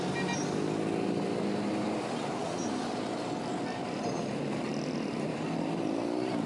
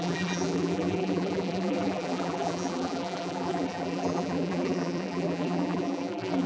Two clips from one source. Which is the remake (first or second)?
second